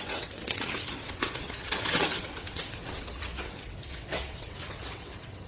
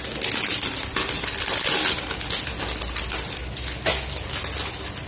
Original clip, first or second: second